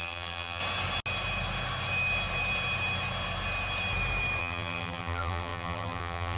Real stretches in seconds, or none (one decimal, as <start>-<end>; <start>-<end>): 0.6-4.4